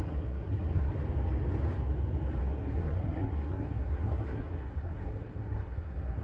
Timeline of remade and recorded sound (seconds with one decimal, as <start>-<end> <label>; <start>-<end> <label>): 0.0-0.9 remade; 0.9-2.4 recorded; 2.4-6.2 remade